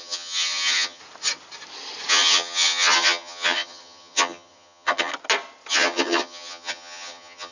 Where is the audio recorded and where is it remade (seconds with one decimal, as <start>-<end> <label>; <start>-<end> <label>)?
0.0-1.0 remade; 1.0-2.1 recorded; 2.1-5.1 remade; 5.1-5.7 recorded; 5.7-7.5 remade